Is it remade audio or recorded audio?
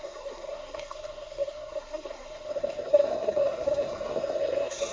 remade